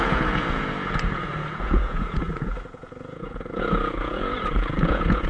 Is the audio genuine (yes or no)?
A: no